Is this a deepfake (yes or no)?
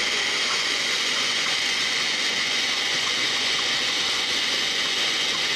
yes